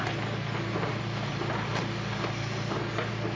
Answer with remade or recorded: recorded